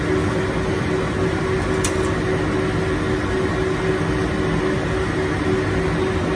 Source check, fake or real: real